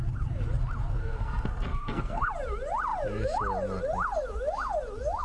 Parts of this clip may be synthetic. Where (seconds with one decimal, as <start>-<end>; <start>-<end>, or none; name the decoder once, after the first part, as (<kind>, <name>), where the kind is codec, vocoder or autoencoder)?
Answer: 1.0-2.3 (codec, SNAC)